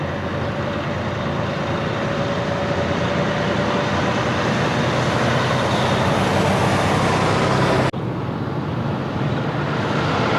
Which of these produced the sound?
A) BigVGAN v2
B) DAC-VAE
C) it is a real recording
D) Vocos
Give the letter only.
C